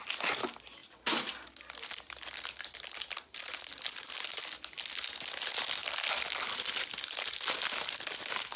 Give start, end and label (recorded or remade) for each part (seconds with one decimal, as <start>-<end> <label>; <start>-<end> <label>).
0.0-5.8 recorded; 5.8-7.0 remade; 7.0-8.6 recorded

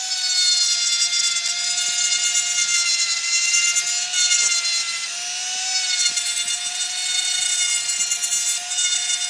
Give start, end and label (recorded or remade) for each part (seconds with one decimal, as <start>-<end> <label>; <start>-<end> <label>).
0.0-2.9 recorded; 2.9-3.6 remade; 3.6-9.3 recorded

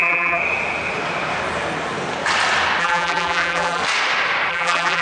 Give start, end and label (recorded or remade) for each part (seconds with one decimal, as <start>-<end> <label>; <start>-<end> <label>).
0.0-0.4 remade; 0.4-2.8 recorded; 2.8-3.8 remade; 3.8-4.5 recorded; 4.5-5.0 remade

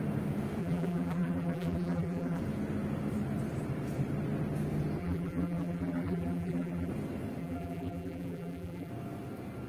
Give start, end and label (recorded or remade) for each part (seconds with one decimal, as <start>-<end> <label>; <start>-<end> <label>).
0.0-0.6 recorded; 0.6-2.4 remade; 2.4-5.0 recorded; 5.0-6.9 remade; 6.9-7.4 recorded; 7.4-8.9 remade; 8.9-9.7 recorded

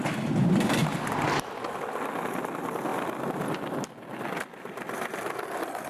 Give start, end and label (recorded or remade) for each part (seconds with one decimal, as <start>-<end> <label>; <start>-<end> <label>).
0.0-5.9 recorded

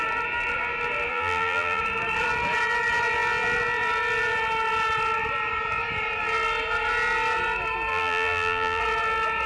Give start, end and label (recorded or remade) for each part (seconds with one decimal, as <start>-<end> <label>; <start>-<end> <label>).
0.0-1.1 recorded; 1.1-1.8 remade; 1.8-7.9 recorded; 7.9-8.8 remade; 8.8-9.5 recorded

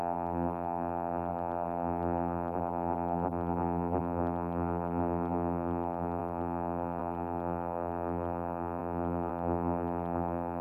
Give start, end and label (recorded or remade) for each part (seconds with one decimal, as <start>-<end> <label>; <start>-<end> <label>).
0.0-10.6 remade